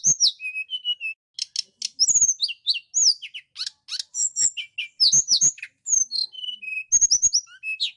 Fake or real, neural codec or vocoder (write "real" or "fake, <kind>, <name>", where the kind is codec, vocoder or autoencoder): real